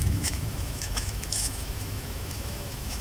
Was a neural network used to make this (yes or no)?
yes